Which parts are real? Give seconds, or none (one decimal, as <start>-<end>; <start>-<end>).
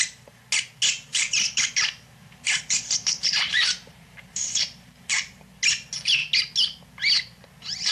0.0-1.1; 5.2-7.9